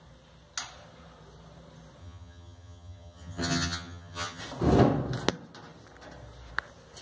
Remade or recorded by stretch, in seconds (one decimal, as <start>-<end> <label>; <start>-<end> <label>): 0.0-2.0 recorded; 2.0-4.4 remade; 4.4-7.0 recorded